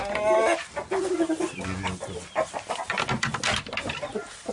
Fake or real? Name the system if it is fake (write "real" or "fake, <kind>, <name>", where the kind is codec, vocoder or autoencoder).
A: real